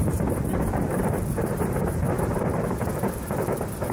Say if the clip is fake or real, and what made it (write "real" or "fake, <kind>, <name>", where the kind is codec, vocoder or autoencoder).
fake, vocoder, BigVGAN v2